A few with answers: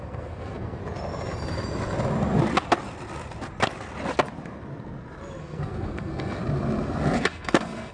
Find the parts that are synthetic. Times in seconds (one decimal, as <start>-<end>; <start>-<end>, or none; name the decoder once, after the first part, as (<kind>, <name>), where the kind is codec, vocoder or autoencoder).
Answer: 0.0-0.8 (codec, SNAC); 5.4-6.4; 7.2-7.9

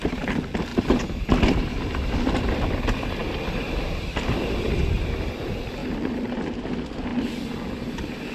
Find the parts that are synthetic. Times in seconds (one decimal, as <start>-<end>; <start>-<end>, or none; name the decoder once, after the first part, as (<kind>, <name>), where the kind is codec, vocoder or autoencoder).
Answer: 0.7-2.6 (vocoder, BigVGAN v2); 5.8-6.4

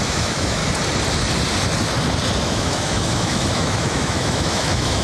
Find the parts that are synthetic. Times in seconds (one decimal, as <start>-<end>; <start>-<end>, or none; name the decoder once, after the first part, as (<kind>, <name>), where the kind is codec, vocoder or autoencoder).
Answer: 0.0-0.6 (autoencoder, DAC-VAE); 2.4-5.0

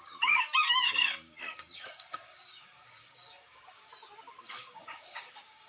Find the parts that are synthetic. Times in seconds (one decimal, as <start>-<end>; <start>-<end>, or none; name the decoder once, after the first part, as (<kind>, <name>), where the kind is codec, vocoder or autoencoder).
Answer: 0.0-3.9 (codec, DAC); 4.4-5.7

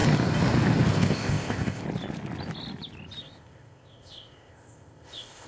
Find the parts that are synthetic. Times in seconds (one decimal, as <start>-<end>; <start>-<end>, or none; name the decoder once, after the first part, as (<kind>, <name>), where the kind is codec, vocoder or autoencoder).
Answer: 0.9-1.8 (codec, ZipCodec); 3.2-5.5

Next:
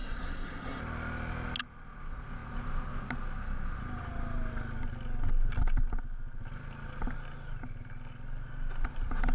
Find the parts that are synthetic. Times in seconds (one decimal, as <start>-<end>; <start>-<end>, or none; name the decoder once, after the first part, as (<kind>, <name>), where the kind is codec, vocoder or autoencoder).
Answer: 0.0-0.8 (codec, SNAC)